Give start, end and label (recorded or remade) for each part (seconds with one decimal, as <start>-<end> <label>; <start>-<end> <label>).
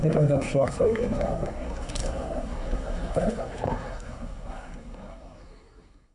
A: 0.0-6.1 remade